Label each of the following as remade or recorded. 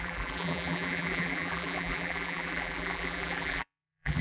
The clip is remade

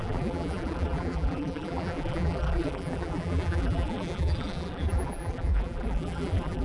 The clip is remade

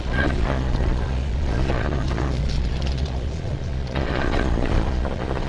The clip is remade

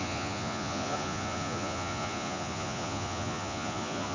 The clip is remade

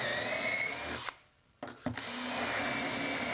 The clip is recorded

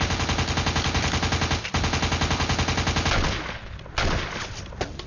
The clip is recorded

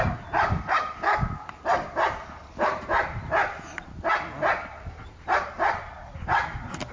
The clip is remade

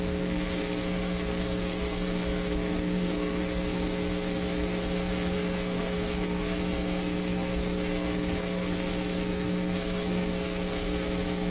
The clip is remade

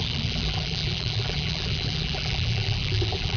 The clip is remade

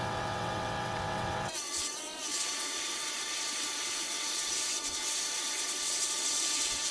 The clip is remade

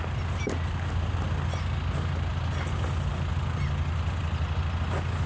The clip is recorded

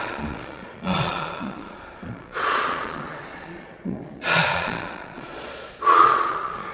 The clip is remade